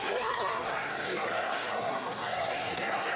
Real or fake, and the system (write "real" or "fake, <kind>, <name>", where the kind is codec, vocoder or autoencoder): fake, codec, SNAC